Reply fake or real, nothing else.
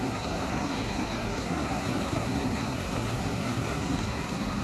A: fake